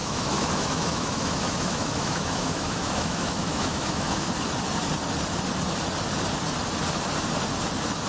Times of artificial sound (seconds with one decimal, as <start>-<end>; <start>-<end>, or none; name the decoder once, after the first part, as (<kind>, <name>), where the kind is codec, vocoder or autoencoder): 0.0-4.3 (autoencoder, DAC-VAE)